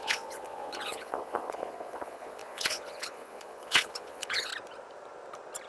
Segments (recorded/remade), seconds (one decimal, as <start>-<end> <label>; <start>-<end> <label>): 0.0-4.5 remade; 4.5-5.7 recorded